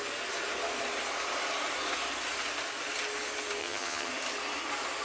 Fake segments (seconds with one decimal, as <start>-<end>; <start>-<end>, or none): 3.6-4.1